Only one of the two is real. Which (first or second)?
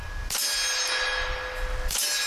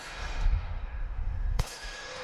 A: first